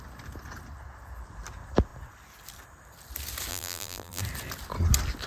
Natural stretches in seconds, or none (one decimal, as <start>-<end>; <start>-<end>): 0.0-3.5; 4.2-5.3